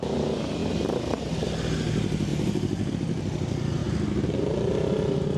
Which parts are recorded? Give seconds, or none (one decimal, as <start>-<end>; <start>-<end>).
0.0-5.4